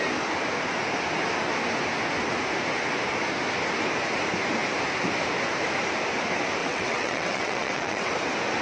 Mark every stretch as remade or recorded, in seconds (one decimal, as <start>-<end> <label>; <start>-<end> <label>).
0.0-6.6 recorded; 6.6-8.1 remade; 8.1-8.6 recorded